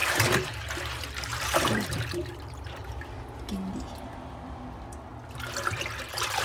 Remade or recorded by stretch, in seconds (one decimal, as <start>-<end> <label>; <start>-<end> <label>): 0.0-3.0 remade; 3.0-6.4 recorded